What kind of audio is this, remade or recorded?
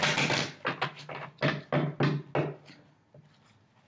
recorded